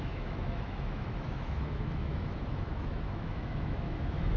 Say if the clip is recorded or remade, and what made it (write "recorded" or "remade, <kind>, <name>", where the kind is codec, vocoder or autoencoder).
remade, autoencoder, DAC-VAE